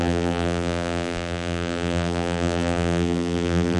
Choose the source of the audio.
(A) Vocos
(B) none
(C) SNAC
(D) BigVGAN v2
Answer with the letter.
D